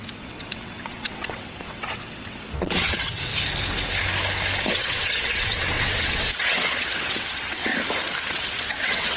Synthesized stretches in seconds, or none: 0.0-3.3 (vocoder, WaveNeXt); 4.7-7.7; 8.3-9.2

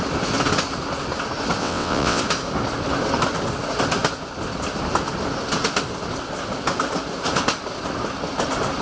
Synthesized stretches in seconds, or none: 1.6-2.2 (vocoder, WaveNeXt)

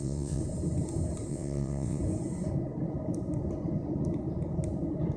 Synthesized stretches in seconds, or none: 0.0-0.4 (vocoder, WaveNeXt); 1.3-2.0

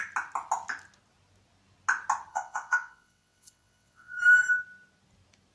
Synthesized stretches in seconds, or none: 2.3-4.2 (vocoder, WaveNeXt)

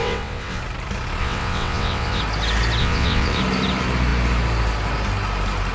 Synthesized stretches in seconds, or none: 0.0-0.6 (vocoder, WaveNeXt); 1.2-2.2; 2.8-3.4

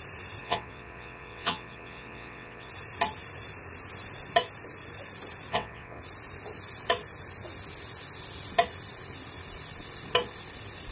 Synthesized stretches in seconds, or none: 0.4-2.7 (vocoder, WaveNeXt); 5.5-6.0